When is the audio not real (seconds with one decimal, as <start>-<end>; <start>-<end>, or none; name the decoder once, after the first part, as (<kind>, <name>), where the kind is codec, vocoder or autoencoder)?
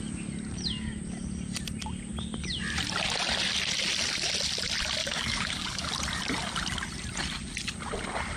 5.0-5.9 (codec, DAC)